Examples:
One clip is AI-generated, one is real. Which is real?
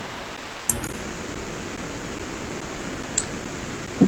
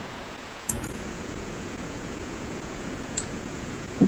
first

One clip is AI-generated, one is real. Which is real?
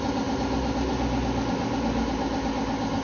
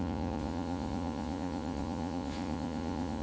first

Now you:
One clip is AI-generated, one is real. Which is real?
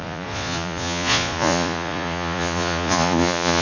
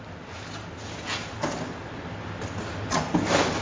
second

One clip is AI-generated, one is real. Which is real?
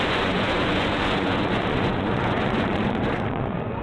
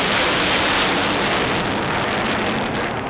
second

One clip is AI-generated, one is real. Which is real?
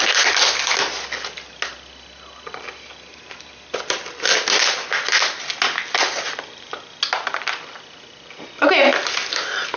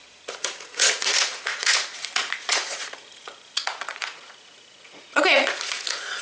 first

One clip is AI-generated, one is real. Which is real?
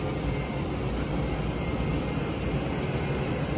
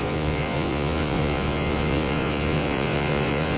first